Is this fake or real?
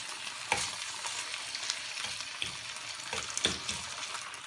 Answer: real